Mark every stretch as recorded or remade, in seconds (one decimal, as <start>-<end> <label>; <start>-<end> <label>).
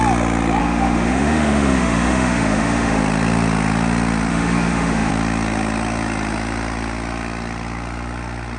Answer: 0.0-0.6 recorded; 0.6-3.0 remade; 3.0-4.3 recorded; 4.3-5.1 remade; 5.1-8.6 recorded